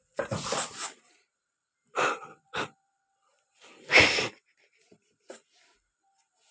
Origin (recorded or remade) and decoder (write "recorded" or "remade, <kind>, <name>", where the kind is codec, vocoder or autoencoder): remade, vocoder, BigVGAN v2